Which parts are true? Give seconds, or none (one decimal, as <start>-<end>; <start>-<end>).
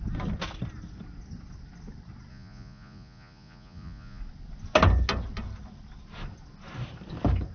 0.0-2.3; 4.2-7.5